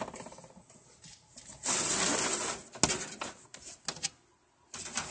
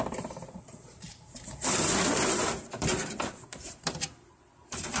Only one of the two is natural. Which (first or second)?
first